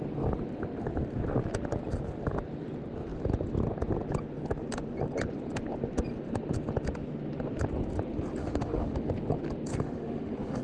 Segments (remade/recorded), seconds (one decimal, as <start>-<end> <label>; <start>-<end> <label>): 0.0-8.4 recorded; 8.4-9.1 remade; 9.1-9.7 recorded; 9.7-10.6 remade